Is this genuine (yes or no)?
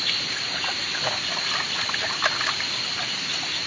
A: yes